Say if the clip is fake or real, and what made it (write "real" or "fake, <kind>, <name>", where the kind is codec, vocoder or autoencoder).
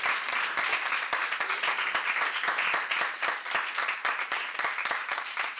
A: real